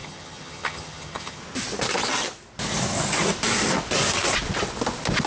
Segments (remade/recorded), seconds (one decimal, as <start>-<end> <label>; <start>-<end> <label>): 0.0-1.4 remade; 1.4-5.3 recorded

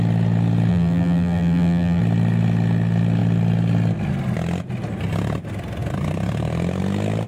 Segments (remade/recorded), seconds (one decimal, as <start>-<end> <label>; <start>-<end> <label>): 0.0-0.7 recorded; 0.7-2.0 remade; 2.0-7.3 recorded